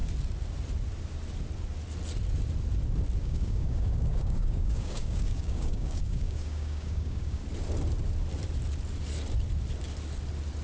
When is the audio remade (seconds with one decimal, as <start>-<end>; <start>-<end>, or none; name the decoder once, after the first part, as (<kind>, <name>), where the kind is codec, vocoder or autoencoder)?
3.2-7.4 (codec, DAC)